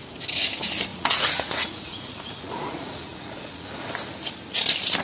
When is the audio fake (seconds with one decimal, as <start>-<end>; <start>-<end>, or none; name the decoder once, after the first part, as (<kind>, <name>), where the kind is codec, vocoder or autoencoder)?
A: 0.9-3.9 (vocoder, Vocos)